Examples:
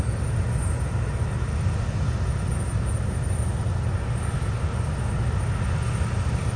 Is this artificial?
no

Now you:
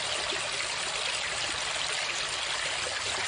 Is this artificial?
no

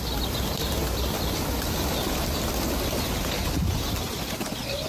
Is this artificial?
no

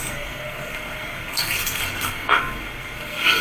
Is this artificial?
yes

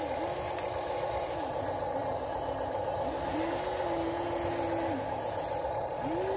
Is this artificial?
no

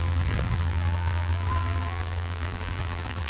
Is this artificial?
yes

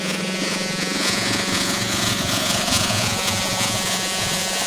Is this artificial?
yes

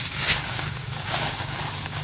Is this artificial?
yes